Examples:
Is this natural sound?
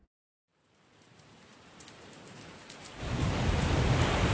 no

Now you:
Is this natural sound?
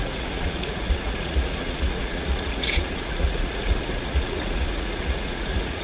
no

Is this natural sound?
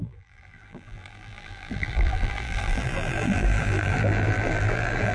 no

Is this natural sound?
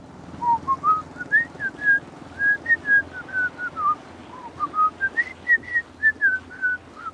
yes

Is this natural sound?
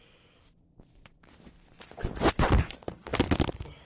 yes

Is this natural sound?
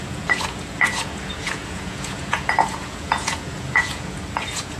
no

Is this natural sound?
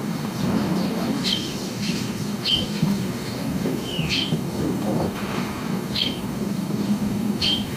no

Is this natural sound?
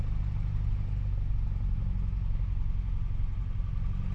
yes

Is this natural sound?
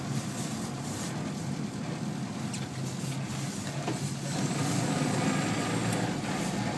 yes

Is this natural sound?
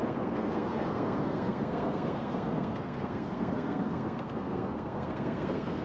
no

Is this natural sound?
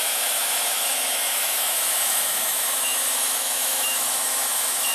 no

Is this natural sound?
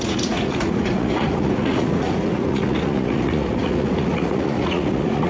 no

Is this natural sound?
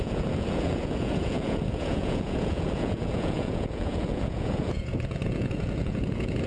no